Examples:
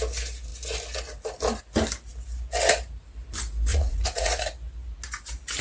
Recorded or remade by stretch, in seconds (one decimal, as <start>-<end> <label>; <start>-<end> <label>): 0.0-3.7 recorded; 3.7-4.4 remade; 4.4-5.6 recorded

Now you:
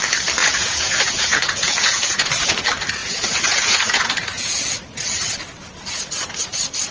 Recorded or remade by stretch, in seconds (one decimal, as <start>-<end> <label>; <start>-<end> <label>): 0.0-0.4 recorded; 0.4-2.3 remade; 2.3-3.0 recorded; 3.0-4.7 remade; 4.7-6.9 recorded

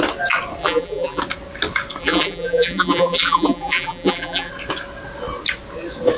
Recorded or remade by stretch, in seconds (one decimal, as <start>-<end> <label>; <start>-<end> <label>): 0.0-0.6 recorded; 0.6-1.2 remade; 1.2-2.0 recorded; 2.0-4.5 remade; 4.5-6.2 recorded

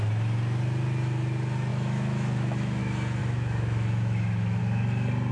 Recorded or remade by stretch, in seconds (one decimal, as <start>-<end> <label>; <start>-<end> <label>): 0.0-1.7 recorded; 1.7-2.8 remade; 2.8-3.2 recorded; 3.2-4.6 remade; 4.6-5.3 recorded

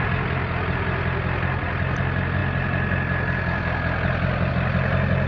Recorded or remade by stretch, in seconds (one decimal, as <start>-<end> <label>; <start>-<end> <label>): 0.0-5.3 recorded

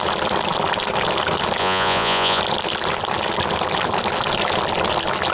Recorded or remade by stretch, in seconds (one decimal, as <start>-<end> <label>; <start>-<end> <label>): 0.0-1.6 recorded; 1.6-2.4 remade; 2.4-5.3 recorded